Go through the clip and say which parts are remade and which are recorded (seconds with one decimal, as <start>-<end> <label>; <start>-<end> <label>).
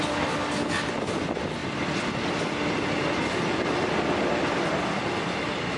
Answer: 0.0-5.8 recorded